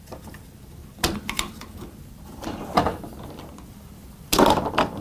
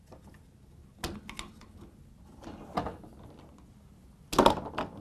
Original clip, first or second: second